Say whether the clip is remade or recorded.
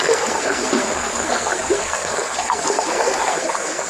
remade